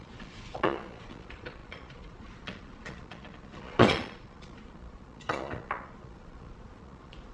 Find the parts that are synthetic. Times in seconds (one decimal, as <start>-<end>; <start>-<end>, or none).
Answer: 0.0-7.3